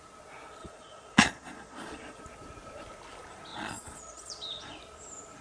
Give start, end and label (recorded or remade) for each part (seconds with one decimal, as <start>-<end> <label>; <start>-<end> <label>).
0.0-0.6 recorded; 0.6-2.2 remade; 2.2-3.5 recorded; 3.5-4.8 remade; 4.8-5.4 recorded